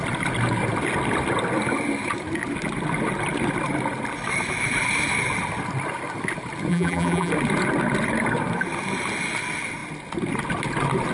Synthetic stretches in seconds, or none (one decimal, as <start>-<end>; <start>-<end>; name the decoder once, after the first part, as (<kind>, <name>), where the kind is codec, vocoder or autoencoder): 6.7-7.3 (vocoder, BigVGAN v2)